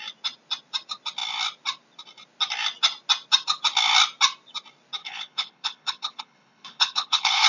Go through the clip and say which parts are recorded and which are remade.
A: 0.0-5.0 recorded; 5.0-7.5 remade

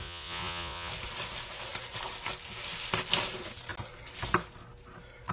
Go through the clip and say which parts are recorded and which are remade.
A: 0.0-0.9 remade; 0.9-5.3 recorded

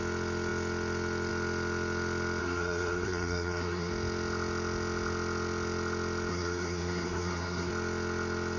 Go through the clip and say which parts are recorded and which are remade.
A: 0.0-2.4 recorded; 2.4-3.9 remade; 3.9-6.3 recorded; 6.3-7.7 remade; 7.7-8.6 recorded

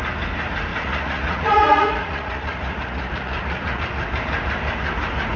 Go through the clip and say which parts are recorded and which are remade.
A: 0.0-0.7 recorded; 0.7-3.8 remade; 3.8-5.4 recorded

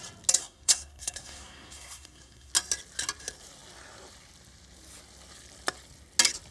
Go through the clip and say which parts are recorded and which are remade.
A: 0.0-0.4 recorded; 0.4-2.5 remade; 2.5-6.5 recorded

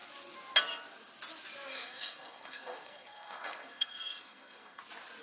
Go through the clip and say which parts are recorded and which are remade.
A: 0.0-1.7 recorded; 1.7-4.8 remade; 4.8-5.2 recorded